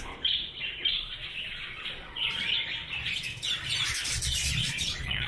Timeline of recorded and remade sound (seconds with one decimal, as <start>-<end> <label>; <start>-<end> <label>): 0.0-0.9 recorded; 0.9-2.3 remade; 2.3-4.6 recorded; 4.6-5.3 remade